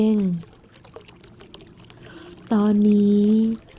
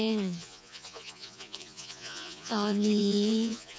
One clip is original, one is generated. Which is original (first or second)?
first